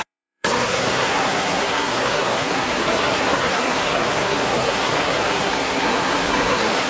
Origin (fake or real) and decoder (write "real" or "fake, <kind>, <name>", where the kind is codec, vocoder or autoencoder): fake, codec, SNAC